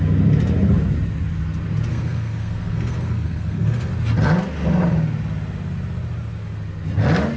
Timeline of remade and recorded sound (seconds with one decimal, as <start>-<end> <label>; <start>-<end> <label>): 0.0-1.9 recorded; 1.9-3.9 remade; 3.9-7.4 recorded